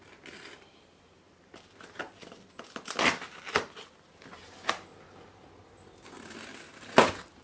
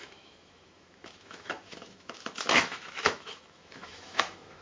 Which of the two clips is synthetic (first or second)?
second